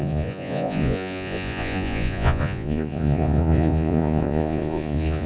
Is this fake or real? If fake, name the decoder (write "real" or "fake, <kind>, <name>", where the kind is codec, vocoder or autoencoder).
fake, vocoder, Vocos